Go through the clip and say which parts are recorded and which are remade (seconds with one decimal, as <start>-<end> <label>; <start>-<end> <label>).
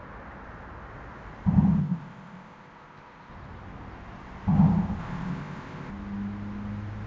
0.0-1.8 recorded; 1.8-3.3 remade; 3.3-5.0 recorded; 5.0-5.9 remade; 5.9-7.1 recorded